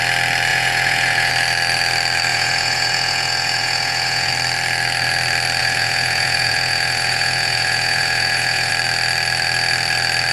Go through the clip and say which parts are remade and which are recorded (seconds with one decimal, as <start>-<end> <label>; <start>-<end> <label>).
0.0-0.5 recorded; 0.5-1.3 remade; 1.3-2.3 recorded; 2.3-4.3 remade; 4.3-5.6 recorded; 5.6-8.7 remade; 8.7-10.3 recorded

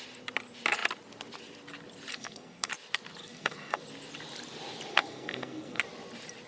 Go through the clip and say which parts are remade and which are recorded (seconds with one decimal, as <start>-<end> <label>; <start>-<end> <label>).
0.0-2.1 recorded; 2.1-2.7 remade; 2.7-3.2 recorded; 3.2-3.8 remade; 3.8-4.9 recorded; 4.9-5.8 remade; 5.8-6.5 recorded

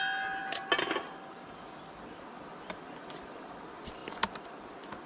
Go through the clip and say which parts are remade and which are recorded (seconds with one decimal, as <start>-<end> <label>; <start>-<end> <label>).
0.0-5.1 recorded

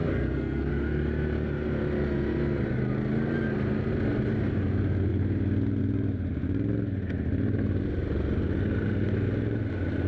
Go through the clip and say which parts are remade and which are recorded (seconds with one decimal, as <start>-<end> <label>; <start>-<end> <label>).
0.0-0.7 remade; 0.7-10.1 recorded

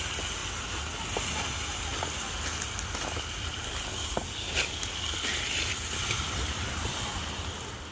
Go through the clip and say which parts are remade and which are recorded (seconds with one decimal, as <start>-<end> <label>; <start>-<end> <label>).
0.0-7.9 recorded

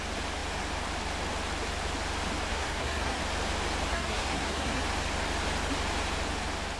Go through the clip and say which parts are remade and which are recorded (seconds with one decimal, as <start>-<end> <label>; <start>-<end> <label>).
0.0-2.5 recorded; 2.5-3.2 remade; 3.2-3.9 recorded; 3.9-4.8 remade; 4.8-6.8 recorded

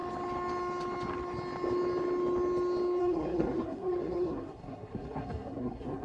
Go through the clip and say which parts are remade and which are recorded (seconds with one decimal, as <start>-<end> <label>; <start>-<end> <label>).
0.0-3.0 recorded; 3.0-6.0 remade